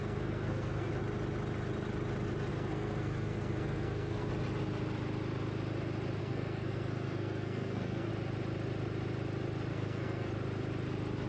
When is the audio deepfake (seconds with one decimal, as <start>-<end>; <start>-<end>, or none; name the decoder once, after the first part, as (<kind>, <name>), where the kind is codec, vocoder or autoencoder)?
0.0-0.9 (codec, SNAC); 2.5-4.3; 6.2-8.1; 9.7-10.3